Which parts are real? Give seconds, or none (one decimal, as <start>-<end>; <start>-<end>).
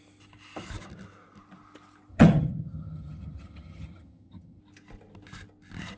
0.0-2.1; 4.6-6.0